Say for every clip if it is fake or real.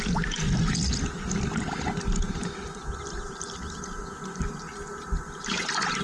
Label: real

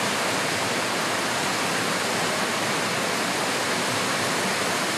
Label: real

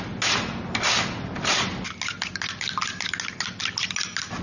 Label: real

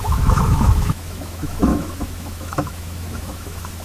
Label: fake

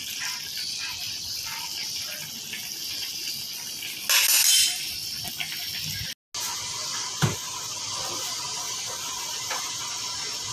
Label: real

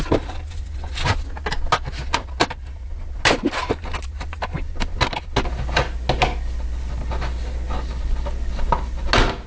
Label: real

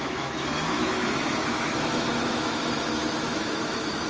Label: fake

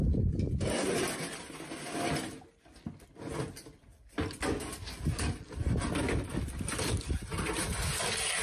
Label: real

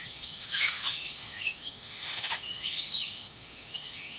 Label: fake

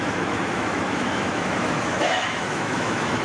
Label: fake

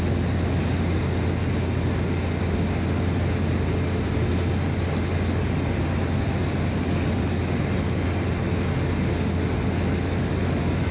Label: real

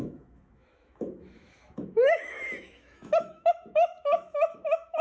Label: fake